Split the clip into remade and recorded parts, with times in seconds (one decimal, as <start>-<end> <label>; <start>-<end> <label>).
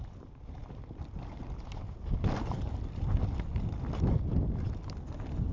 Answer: 0.0-5.5 recorded